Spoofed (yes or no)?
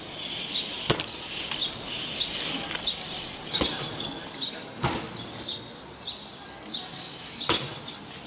no